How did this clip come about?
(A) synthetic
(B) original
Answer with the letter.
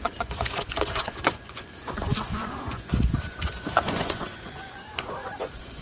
A